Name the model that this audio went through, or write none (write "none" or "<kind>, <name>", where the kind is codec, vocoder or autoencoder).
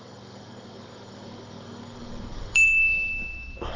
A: codec, DAC